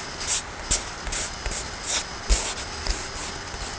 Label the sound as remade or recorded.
recorded